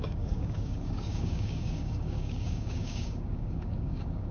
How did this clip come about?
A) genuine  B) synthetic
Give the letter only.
B